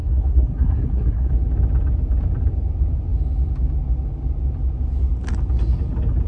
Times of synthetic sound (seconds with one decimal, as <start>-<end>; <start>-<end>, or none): 0.0-1.3